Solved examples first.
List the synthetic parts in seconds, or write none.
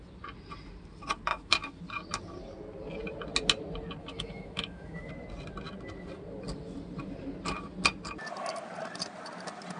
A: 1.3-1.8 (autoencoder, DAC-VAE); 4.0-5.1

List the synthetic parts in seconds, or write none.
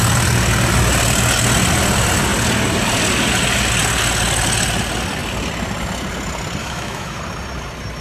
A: 6.6-7.2 (autoencoder, DAC-VAE)